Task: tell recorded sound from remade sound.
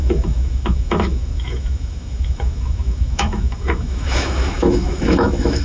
remade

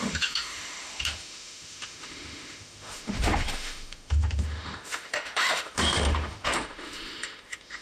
remade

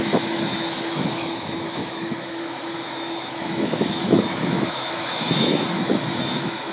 remade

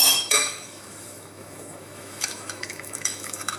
remade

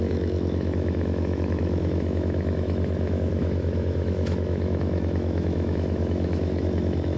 remade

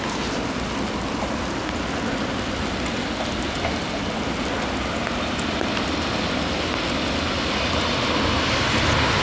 recorded